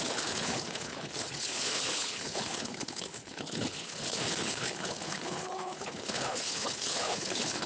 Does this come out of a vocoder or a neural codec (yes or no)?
yes